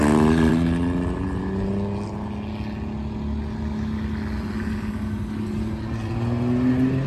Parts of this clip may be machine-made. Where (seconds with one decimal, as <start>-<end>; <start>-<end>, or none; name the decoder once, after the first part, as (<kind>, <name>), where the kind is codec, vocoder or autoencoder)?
none